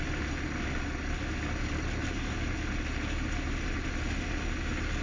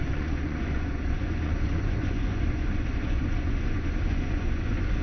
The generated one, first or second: second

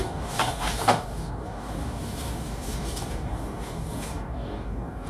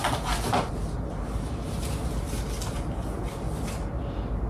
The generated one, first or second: first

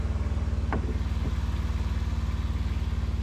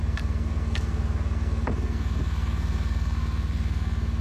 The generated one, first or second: second